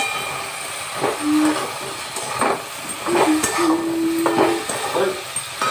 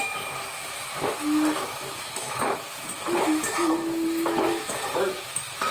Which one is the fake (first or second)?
second